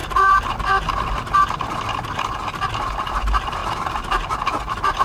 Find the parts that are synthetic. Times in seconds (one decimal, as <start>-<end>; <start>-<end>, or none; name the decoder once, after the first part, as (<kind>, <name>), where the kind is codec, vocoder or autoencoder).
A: none